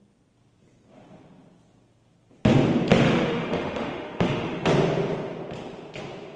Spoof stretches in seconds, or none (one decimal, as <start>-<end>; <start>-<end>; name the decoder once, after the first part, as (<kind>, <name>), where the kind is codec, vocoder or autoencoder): 2.9-4.7 (autoencoder, DAC-VAE)